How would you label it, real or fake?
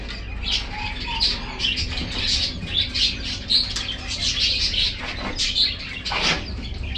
real